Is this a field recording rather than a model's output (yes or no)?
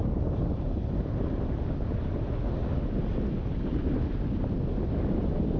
yes